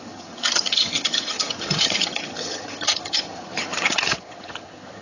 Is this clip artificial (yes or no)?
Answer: yes